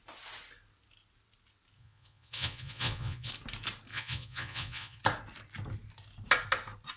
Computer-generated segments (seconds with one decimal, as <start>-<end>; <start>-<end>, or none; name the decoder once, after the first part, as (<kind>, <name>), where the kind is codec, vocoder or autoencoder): 1.8-3.3 (vocoder, Vocos); 3.9-5.0